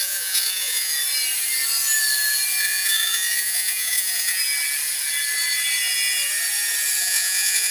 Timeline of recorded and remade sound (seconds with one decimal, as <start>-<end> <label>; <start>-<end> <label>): 0.0-0.9 remade; 0.9-2.6 recorded; 2.6-4.4 remade; 4.4-7.0 recorded; 7.0-7.7 remade